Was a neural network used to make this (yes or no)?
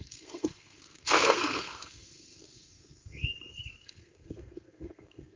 yes